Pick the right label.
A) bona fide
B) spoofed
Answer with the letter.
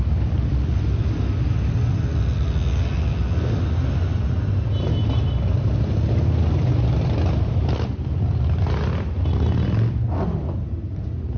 A